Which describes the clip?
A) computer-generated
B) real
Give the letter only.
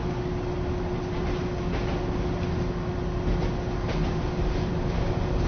B